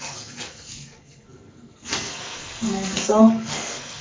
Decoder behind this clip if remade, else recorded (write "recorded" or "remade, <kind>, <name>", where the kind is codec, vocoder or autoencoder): remade, codec, SNAC